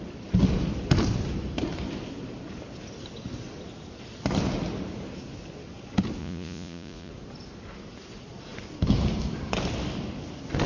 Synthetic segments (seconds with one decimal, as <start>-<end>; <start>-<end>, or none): 6.2-7.1